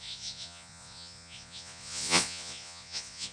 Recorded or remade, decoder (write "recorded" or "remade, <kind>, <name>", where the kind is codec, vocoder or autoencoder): remade, vocoder, Vocos